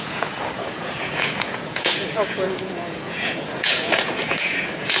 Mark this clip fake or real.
fake